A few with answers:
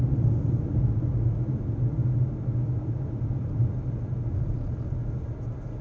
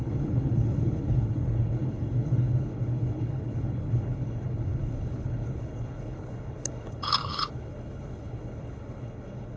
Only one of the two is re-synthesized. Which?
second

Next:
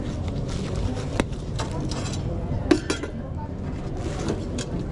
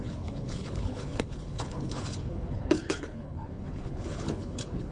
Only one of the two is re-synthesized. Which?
second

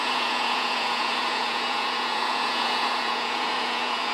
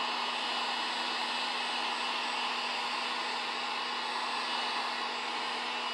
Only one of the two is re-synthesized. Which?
first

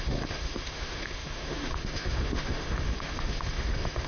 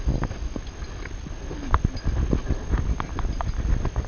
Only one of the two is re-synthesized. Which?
first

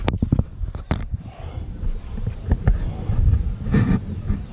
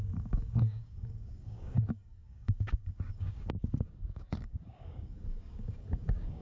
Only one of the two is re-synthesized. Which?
second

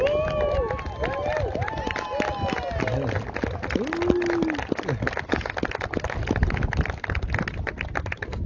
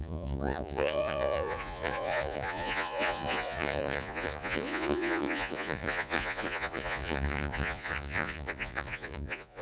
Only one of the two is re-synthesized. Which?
second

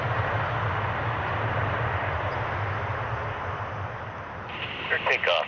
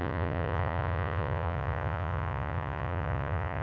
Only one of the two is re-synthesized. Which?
second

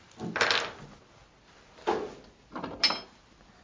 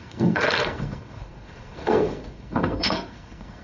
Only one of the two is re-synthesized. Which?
second